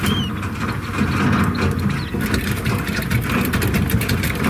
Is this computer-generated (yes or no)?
no